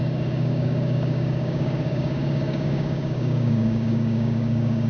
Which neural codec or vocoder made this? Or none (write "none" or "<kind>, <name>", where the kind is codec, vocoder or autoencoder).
codec, DAC